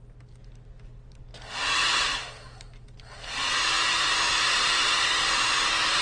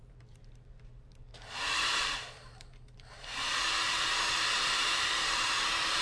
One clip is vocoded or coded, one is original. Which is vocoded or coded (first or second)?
second